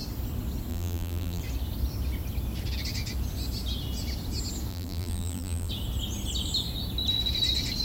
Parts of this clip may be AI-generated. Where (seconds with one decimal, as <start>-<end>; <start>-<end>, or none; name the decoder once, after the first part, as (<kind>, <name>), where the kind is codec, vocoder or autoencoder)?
0.7-1.4 (vocoder, BigVGAN v2); 4.7-5.7